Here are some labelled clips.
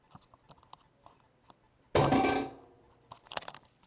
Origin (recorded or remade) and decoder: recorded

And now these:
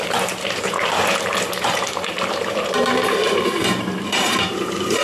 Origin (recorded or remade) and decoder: remade, vocoder, BigVGAN v2